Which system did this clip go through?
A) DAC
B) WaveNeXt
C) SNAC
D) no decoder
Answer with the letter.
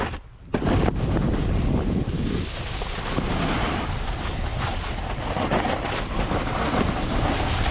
D